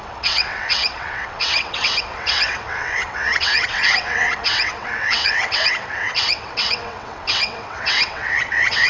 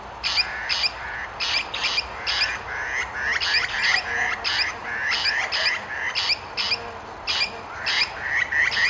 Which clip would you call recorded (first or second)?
second